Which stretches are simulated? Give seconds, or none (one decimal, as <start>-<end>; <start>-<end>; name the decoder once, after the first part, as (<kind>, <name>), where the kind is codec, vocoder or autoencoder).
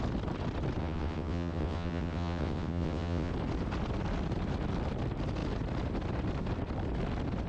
0.8-3.3 (vocoder, WaveNeXt)